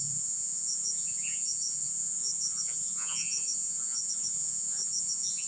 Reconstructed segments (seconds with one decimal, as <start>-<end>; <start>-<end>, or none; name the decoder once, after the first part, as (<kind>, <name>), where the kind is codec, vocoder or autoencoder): 0.0-5.5 (vocoder, Vocos)